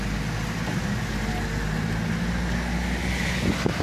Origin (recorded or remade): recorded